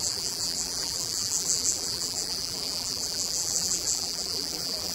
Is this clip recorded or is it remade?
remade